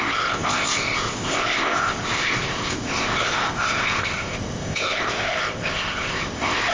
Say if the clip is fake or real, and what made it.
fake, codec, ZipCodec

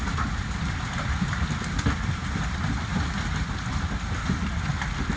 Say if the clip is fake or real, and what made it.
real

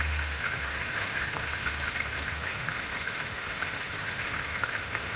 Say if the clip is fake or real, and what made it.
fake, autoencoder, DAC-VAE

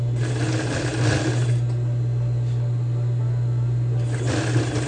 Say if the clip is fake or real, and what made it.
real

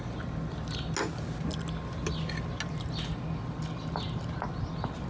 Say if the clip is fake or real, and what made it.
real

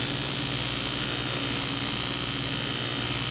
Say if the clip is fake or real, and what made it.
real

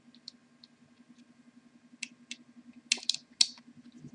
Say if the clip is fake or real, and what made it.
real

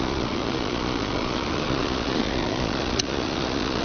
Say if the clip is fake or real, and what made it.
fake, vocoder, Vocos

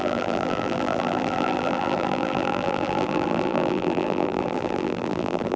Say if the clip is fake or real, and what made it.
fake, vocoder, BigVGAN v2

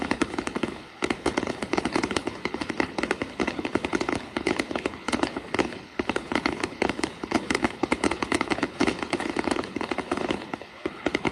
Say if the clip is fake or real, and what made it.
fake, codec, HILCodec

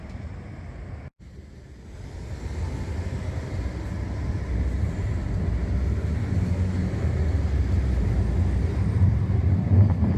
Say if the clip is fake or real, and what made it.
real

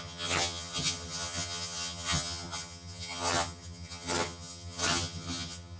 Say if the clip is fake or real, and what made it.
fake, vocoder, HiFi-GAN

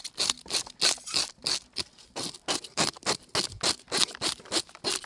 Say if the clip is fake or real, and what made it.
real